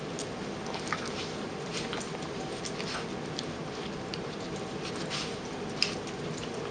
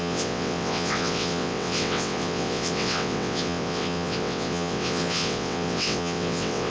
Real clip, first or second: first